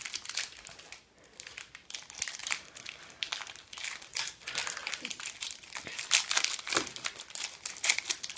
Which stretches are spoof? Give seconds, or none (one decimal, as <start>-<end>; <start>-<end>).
none